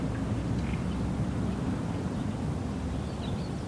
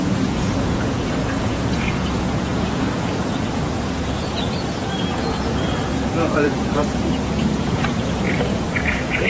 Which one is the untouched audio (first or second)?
first